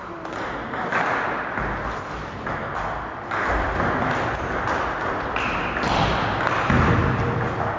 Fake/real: real